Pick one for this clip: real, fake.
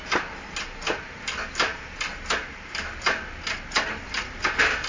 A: real